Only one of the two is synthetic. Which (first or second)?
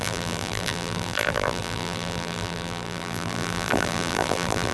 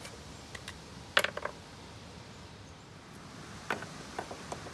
first